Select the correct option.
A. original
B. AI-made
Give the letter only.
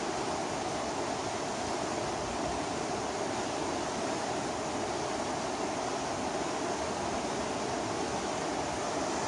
A